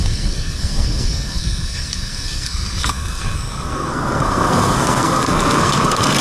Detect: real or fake fake